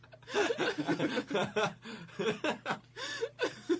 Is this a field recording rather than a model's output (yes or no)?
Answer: yes